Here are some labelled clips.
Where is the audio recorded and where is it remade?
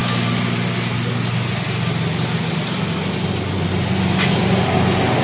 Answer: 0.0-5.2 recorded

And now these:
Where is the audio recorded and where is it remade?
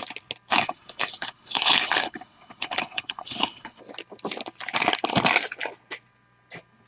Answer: 0.0-0.5 recorded; 0.5-3.8 remade; 3.8-6.9 recorded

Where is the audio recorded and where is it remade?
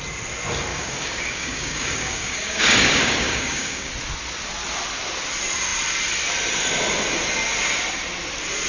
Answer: 0.0-0.7 recorded; 0.7-3.9 remade; 3.9-8.7 recorded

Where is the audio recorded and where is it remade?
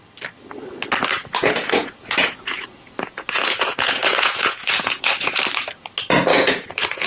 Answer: 0.0-1.3 recorded; 1.3-5.4 remade; 5.4-6.3 recorded; 6.3-7.1 remade